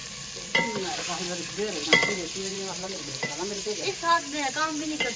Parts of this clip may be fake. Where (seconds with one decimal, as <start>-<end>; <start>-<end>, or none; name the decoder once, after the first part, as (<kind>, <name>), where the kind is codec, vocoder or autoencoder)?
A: 2.5-5.2 (vocoder, BigVGAN v2)